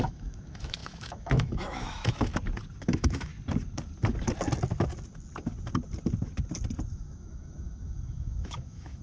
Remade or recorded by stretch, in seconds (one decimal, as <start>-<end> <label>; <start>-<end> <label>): 0.0-2.3 remade; 2.3-2.8 recorded; 2.8-3.3 remade; 3.3-6.9 recorded; 6.9-9.0 remade